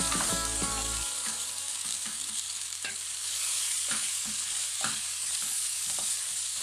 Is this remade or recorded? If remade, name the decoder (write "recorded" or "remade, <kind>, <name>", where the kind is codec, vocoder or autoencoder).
remade, codec, DAC